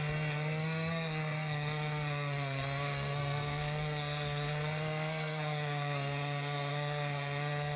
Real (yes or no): no